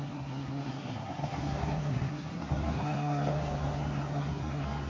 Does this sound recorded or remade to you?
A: remade